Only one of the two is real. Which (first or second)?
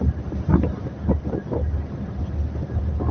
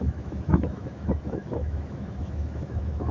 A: first